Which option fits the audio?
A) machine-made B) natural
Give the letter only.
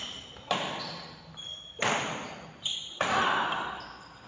B